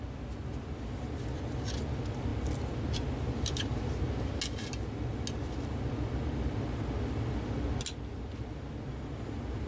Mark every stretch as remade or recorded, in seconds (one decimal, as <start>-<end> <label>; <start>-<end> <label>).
0.0-9.7 recorded